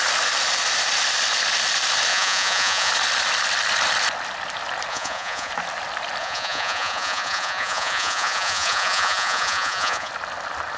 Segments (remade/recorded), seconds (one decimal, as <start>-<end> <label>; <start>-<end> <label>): 0.0-2.1 recorded; 2.1-2.9 remade; 2.9-4.9 recorded; 4.9-5.5 remade; 5.5-6.2 recorded; 6.2-10.1 remade; 10.1-10.8 recorded